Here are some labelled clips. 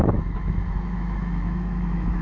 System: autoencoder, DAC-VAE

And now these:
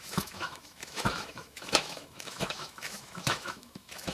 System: autoencoder, DAC-VAE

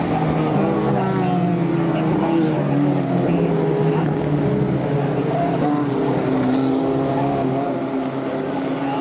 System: none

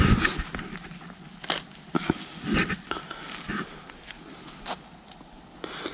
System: none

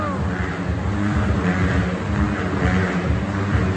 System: none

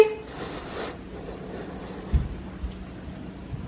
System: none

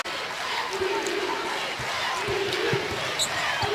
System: none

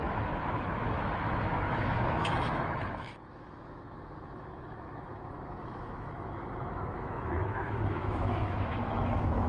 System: autoencoder, DAC-VAE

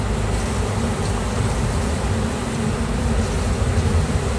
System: none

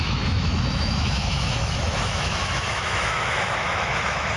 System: autoencoder, DAC-VAE